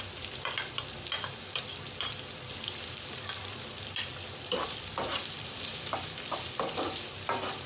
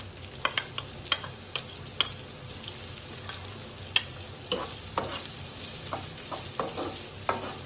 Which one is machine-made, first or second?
first